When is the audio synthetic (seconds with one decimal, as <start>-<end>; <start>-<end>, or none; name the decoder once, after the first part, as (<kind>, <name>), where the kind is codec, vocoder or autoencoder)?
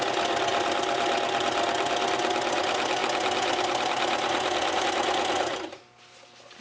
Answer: none